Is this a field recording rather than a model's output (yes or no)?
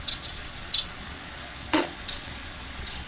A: no